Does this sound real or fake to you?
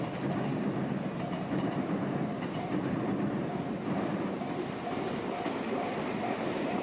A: fake